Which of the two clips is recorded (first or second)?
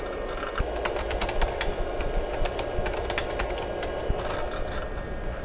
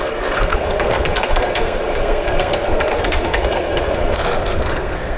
first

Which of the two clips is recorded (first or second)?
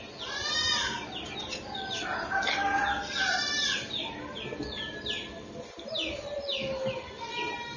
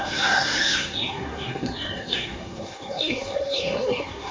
first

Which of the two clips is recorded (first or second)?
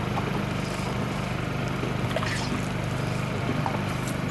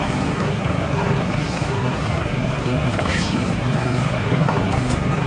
first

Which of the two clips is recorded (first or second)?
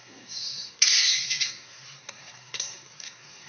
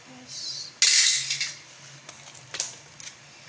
second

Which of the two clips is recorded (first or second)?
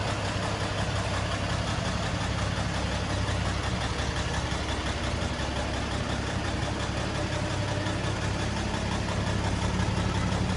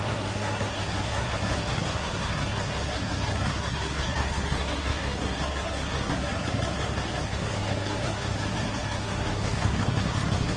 first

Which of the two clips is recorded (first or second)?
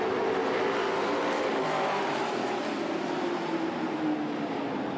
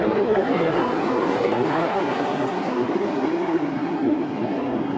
first